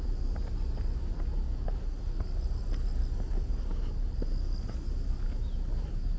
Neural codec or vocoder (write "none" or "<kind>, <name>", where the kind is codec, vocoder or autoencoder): none